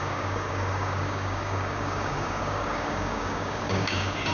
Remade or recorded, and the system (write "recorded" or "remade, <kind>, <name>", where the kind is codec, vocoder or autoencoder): remade, codec, DAC